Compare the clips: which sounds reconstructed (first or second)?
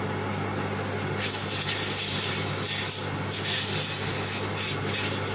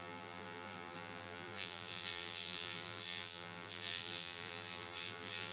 second